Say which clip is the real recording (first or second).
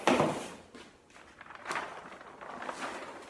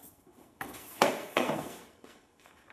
first